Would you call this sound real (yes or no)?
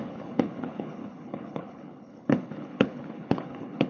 no